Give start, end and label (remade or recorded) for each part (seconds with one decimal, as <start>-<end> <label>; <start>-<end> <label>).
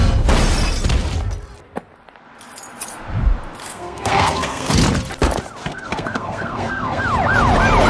0.0-3.6 recorded; 3.6-4.7 remade; 4.7-5.6 recorded; 5.6-7.0 remade; 7.0-7.9 recorded